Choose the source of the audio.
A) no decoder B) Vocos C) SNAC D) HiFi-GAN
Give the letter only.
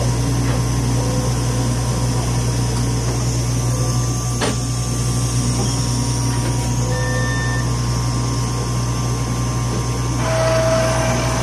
A